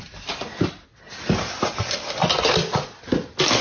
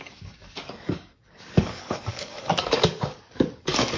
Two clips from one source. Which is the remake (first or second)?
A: second